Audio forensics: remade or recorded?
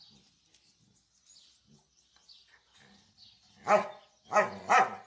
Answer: recorded